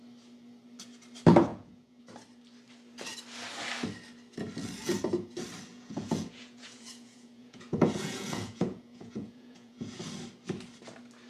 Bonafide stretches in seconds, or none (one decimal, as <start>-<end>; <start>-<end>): 0.0-1.5; 2.0-5.7; 10.0-11.3